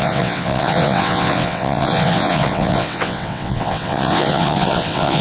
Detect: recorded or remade remade